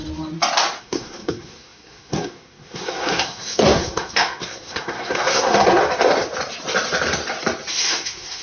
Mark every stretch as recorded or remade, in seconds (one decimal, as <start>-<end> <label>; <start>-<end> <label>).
0.0-0.8 recorded; 0.8-5.8 remade; 5.8-7.7 recorded; 7.7-8.4 remade